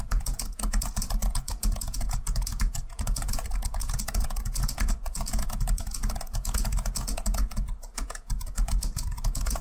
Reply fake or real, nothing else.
fake